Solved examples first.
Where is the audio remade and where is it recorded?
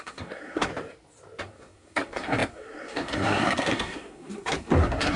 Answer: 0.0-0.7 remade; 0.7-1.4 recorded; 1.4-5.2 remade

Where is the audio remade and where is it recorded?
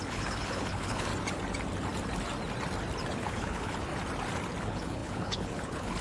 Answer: 0.0-1.1 remade; 1.1-3.2 recorded; 3.2-3.9 remade; 3.9-4.6 recorded; 4.6-6.0 remade